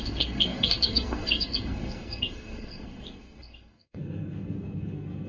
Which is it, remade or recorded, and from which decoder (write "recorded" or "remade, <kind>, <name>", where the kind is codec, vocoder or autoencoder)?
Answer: remade, codec, SNAC